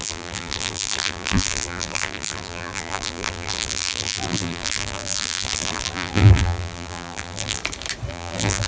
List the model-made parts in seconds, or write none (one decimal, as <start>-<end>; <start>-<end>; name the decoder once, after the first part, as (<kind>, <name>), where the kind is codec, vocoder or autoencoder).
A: 0.0-7.6 (vocoder, BigVGAN v2); 8.1-8.7

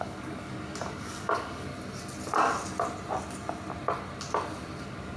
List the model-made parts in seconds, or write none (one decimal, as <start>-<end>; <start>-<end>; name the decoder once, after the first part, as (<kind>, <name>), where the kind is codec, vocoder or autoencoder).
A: 0.0-1.7 (codec, DAC); 4.8-5.2